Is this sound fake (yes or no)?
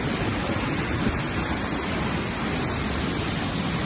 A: no